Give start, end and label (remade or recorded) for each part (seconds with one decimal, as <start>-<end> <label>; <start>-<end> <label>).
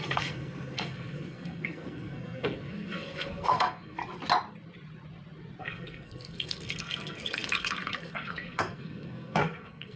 0.0-4.0 remade; 4.0-5.6 recorded; 5.6-10.0 remade